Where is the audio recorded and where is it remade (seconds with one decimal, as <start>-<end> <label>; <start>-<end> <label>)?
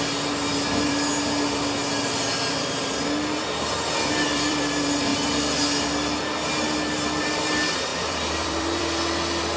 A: 0.0-1.1 remade; 1.1-2.5 recorded; 2.5-5.1 remade; 5.1-7.2 recorded; 7.2-9.6 remade